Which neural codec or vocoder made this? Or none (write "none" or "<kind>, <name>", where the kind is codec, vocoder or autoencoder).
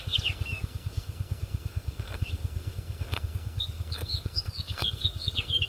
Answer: codec, SNAC